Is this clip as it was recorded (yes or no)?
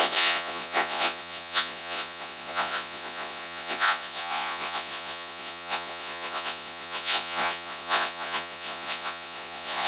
no